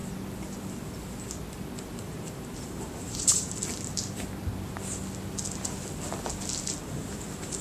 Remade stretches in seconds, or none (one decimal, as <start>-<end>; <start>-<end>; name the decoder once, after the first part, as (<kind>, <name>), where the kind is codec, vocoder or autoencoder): 1.9-3.6 (vocoder, BigVGAN v2); 6.8-7.6